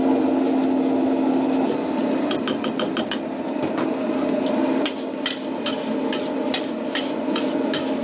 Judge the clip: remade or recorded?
recorded